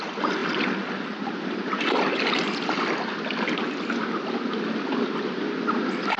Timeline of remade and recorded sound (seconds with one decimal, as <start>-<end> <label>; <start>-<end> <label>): 0.0-0.4 recorded; 0.4-3.6 remade; 3.6-6.2 recorded